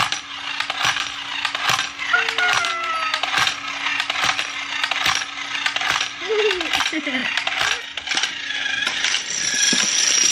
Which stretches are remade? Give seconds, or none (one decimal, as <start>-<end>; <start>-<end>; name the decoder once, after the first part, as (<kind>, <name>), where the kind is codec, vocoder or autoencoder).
none